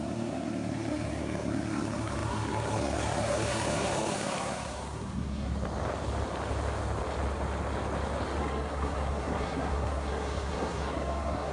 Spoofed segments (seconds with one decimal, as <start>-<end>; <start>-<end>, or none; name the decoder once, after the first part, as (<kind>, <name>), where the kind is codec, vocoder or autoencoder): 0.0-5.5 (codec, SNAC); 8.4-11.5